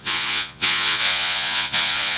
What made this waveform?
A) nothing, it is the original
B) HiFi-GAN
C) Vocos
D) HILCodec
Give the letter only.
C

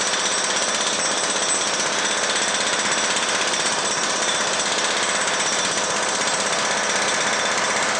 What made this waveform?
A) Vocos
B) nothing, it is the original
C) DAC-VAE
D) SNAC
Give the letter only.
B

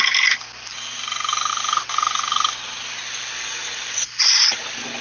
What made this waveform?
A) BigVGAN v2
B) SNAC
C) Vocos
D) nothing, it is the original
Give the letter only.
D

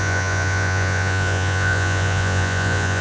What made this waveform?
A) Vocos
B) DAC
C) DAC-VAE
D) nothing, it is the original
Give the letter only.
A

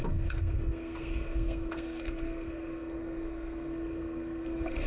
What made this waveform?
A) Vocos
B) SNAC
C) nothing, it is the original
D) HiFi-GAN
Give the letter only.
B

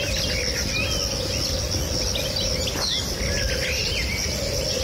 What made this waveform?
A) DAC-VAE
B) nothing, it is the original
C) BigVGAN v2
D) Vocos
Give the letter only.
B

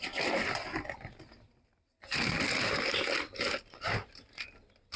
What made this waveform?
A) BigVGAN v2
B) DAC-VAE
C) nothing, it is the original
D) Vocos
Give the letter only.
C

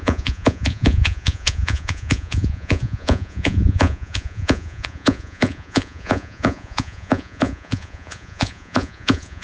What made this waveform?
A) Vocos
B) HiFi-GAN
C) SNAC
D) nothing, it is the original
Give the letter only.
A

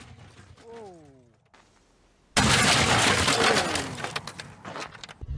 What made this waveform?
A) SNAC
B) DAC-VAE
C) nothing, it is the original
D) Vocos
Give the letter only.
C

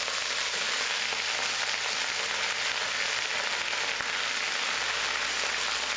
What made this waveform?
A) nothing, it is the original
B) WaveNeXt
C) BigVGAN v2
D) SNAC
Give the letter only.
A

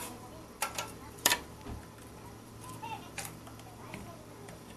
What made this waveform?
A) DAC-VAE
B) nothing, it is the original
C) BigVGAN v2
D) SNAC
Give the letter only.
C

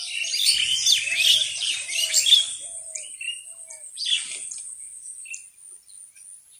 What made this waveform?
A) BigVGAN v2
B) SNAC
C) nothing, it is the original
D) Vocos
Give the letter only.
C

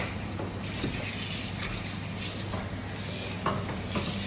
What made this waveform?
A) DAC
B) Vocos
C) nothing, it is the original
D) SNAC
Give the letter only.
C